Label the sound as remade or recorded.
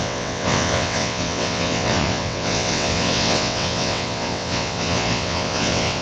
remade